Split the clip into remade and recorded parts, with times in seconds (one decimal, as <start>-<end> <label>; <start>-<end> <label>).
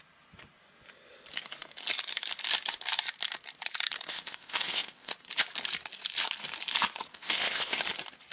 0.0-4.1 recorded; 4.1-5.1 remade; 5.1-7.1 recorded; 7.1-7.8 remade; 7.8-8.3 recorded